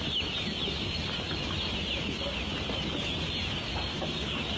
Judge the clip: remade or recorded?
recorded